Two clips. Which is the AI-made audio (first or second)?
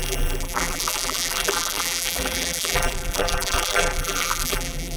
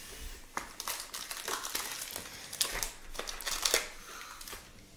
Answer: first